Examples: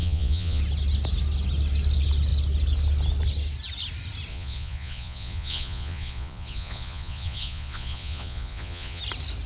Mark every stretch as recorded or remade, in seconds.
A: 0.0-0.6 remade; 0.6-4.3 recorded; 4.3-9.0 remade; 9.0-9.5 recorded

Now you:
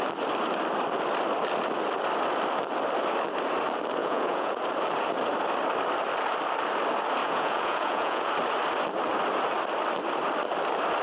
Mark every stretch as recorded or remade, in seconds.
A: 0.0-4.0 recorded; 4.0-4.6 remade; 4.6-7.2 recorded; 7.2-8.3 remade; 8.3-11.0 recorded

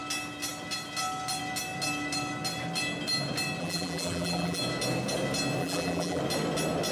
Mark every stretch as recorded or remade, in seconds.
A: 0.0-3.6 recorded; 3.6-4.6 remade; 4.6-5.6 recorded; 5.6-6.2 remade; 6.2-6.9 recorded

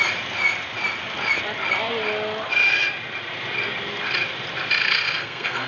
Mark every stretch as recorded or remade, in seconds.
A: 0.0-4.8 recorded; 4.8-5.7 remade

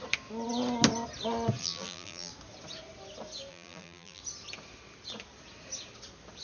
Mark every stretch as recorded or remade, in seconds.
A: 0.0-1.6 recorded; 1.6-2.3 remade; 2.3-3.5 recorded; 3.5-4.2 remade; 4.2-6.4 recorded

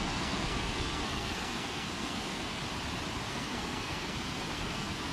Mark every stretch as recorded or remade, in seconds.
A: 0.0-2.6 remade; 2.6-3.3 recorded; 3.3-5.1 remade